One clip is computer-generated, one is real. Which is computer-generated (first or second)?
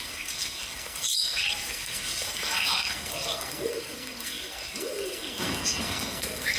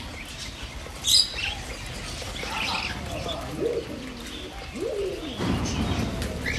first